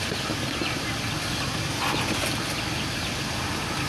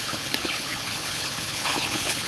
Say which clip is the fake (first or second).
second